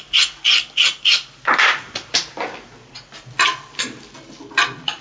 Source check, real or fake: real